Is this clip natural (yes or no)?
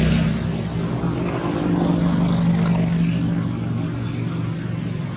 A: yes